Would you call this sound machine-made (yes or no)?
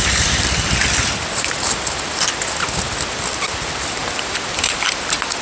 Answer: yes